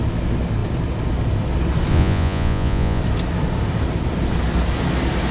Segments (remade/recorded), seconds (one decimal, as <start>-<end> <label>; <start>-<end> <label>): 0.0-1.9 recorded; 1.9-3.0 remade; 3.0-5.3 recorded